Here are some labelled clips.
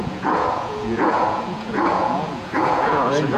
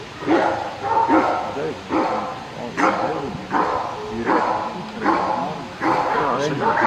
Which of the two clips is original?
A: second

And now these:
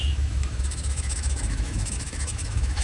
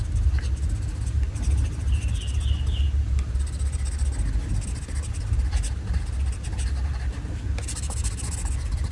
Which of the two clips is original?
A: second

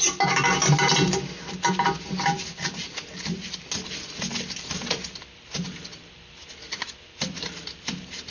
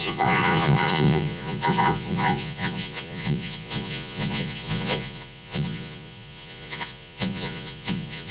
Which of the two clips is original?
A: first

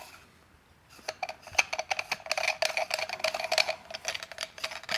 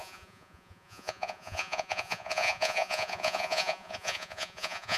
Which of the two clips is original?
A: first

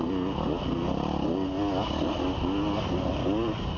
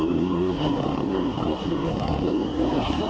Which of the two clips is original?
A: first